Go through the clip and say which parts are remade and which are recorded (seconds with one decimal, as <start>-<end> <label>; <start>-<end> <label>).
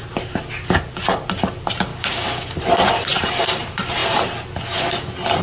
0.0-1.9 recorded; 1.9-2.5 remade; 2.5-5.4 recorded